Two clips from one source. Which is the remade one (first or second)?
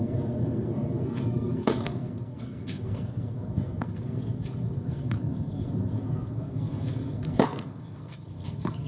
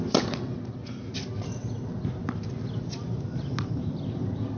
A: first